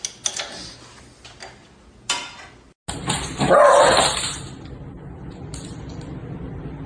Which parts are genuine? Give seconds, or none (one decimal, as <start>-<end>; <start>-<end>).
0.0-6.9